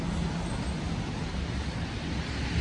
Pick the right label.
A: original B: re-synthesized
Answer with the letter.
A